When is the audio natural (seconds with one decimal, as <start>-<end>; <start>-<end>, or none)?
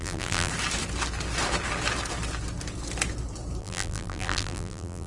0.5-3.6